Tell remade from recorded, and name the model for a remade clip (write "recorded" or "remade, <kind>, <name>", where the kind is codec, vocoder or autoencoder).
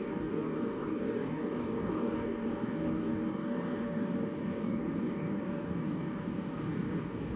remade, codec, DAC